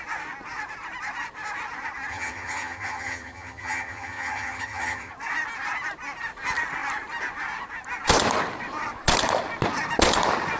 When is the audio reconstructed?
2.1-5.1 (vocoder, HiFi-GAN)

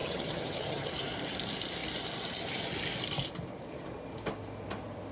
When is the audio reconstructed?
0.0-0.9 (vocoder, HiFi-GAN)

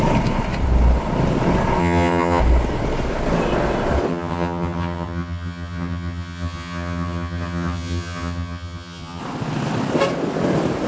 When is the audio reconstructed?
1.8-2.4 (vocoder, HiFi-GAN); 4.1-9.2

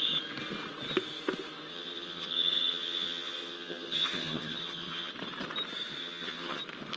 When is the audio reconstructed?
1.7-5.1 (vocoder, HiFi-GAN); 6.0-6.6

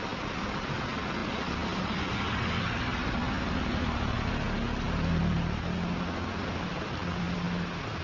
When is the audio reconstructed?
none